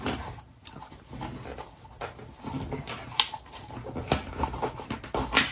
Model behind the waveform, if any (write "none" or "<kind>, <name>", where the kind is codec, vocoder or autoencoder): none